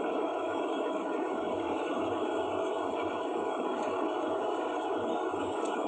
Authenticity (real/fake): fake